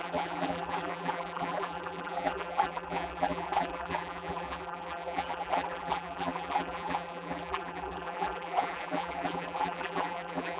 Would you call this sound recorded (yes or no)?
no